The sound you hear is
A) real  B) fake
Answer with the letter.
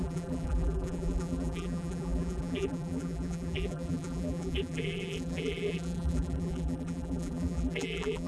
B